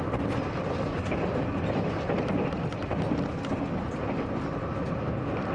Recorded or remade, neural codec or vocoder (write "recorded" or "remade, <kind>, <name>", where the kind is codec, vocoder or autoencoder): recorded